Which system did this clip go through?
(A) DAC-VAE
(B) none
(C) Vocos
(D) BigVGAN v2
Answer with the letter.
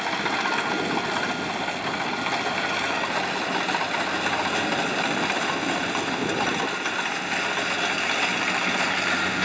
B